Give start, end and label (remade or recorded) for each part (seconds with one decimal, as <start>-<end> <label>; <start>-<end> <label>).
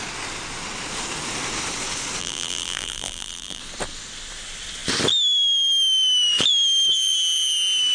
0.0-2.2 recorded; 2.2-3.6 remade; 3.6-7.9 recorded